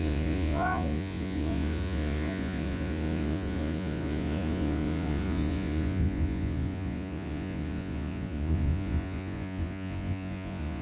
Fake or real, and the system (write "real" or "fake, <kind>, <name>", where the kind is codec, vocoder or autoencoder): fake, vocoder, Vocos